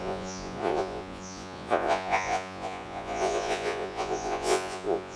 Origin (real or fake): fake